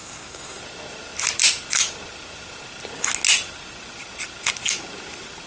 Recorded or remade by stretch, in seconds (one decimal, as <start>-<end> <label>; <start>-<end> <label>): 0.0-0.6 remade; 0.6-5.5 recorded